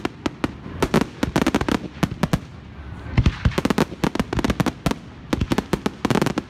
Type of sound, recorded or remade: recorded